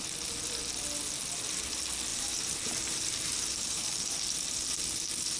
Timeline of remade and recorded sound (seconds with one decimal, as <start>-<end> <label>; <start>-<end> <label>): 0.0-2.1 recorded; 2.1-4.2 remade; 4.2-5.4 recorded